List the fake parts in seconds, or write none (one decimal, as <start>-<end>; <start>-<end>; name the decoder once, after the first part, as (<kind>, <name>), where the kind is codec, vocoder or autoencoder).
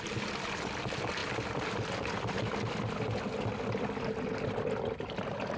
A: none